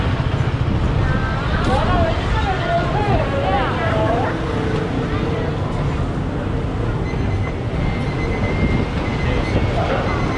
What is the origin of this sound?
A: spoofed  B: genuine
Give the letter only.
B